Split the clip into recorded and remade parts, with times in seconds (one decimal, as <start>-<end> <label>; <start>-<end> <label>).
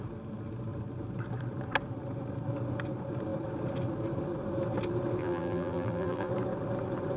0.0-5.2 recorded; 5.2-6.3 remade; 6.3-7.2 recorded